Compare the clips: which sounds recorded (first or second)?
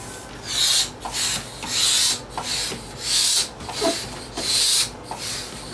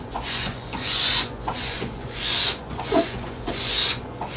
first